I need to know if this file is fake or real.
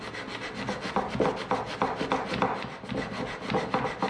real